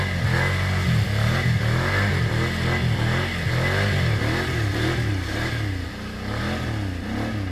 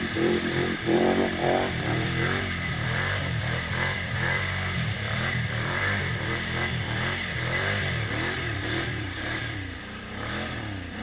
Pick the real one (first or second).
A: first